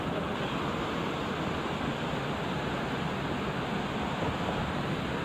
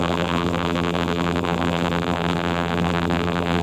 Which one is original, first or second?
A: first